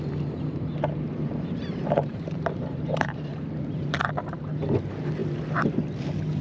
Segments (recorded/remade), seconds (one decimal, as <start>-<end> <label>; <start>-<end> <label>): 0.0-0.7 recorded; 0.7-4.5 remade; 4.5-6.4 recorded